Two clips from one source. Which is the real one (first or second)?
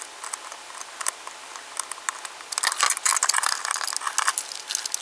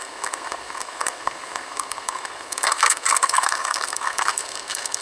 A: first